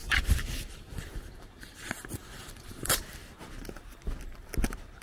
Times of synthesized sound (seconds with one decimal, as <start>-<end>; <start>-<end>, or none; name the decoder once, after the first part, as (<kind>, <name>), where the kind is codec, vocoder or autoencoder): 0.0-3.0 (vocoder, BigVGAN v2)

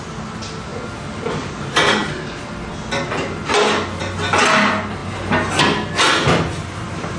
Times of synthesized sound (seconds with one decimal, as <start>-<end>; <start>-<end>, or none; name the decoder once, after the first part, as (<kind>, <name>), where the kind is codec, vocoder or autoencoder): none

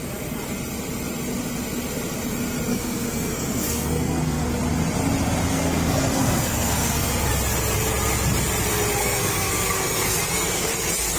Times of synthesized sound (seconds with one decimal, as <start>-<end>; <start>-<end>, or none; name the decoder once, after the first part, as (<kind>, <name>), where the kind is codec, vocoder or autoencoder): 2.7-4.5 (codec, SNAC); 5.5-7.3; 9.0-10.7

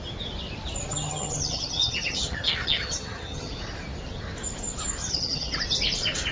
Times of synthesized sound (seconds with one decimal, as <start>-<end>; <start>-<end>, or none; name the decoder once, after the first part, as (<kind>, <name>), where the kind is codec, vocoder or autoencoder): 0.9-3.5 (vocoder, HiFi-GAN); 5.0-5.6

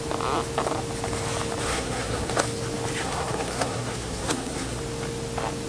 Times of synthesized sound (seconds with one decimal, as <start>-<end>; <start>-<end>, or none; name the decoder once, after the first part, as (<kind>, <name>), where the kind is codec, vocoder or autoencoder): 1.7-2.3 (codec, SNAC); 3.0-4.8